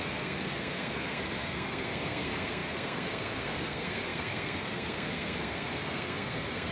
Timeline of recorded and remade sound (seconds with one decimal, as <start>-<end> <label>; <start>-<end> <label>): 0.0-6.7 remade